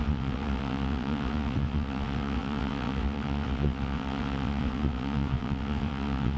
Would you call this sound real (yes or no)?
no